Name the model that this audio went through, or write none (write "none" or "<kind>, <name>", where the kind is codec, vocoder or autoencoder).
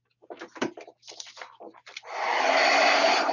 none